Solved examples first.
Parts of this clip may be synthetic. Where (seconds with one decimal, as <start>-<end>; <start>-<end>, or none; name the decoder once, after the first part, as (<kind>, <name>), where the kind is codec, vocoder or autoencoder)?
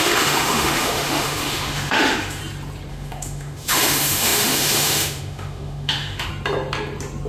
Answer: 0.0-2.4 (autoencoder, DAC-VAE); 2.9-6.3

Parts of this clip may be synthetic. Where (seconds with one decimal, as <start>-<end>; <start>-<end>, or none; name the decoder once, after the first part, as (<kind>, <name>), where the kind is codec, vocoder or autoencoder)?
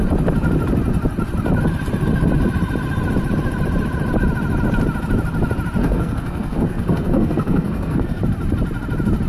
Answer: 5.8-8.2 (codec, SNAC)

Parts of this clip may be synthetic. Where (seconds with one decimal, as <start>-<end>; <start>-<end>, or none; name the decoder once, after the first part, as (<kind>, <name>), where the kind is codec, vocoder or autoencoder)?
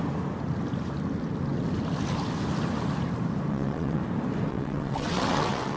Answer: 3.5-4.0 (vocoder, WaveNeXt); 4.5-5.8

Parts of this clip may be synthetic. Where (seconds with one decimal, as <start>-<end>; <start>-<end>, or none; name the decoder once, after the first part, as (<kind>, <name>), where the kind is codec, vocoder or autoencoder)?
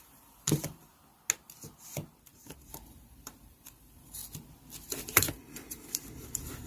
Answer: 0.0-0.9 (vocoder, BigVGAN v2); 2.3-4.2; 5.0-6.7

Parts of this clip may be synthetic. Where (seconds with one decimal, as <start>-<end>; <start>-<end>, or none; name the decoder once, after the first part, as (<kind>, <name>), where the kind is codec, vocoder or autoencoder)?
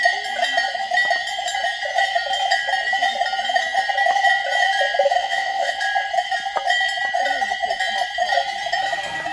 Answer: 5.2-5.8 (vocoder, WaveNeXt)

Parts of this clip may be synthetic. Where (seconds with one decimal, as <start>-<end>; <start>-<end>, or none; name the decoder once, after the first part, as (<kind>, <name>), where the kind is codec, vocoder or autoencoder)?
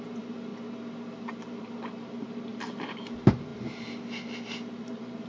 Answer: 0.0-0.5 (vocoder, BigVGAN v2); 1.3-3.5; 4.7-5.3